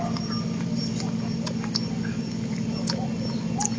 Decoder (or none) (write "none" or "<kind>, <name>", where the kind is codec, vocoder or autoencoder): none